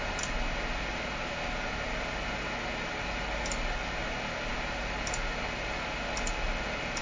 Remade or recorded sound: recorded